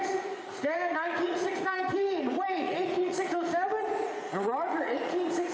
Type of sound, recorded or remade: remade